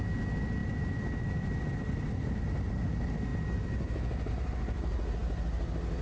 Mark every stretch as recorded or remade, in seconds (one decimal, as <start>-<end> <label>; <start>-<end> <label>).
0.0-0.6 recorded; 0.6-2.4 remade; 2.4-6.0 recorded